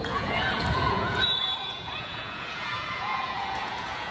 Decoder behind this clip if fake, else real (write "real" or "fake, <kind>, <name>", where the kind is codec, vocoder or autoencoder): fake, vocoder, Vocos